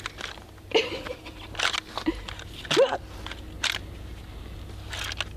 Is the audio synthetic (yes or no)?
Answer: no